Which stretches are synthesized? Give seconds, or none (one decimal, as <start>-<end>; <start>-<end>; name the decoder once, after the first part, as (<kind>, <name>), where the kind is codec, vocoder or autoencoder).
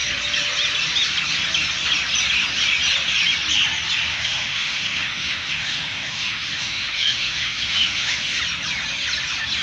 4.1-8.4 (autoencoder, DAC-VAE)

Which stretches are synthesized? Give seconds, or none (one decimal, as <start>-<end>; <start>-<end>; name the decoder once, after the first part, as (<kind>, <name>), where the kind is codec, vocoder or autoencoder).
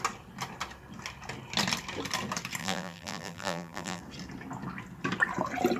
2.6-4.0 (vocoder, BigVGAN v2)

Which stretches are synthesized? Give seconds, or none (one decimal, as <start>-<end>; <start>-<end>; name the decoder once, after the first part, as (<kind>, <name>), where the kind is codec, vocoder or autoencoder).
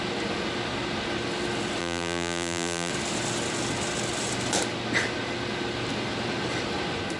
1.8-2.9 (vocoder, BigVGAN v2)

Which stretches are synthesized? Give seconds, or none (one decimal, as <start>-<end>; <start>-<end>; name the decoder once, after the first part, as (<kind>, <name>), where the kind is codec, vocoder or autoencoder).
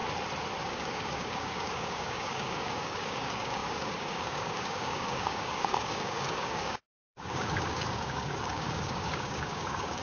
0.6-10.0 (codec, DAC)